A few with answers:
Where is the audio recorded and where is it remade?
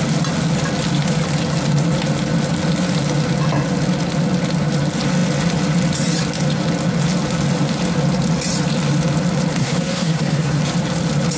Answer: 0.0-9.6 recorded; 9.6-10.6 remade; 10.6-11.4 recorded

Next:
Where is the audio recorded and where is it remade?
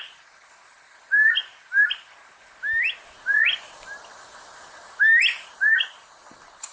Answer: 0.0-6.7 recorded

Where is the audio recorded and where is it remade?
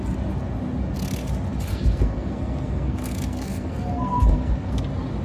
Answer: 0.0-1.7 recorded; 1.7-4.8 remade; 4.8-5.2 recorded